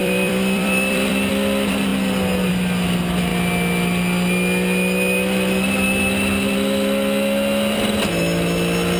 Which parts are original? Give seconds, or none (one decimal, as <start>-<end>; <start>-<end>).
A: 1.3-9.0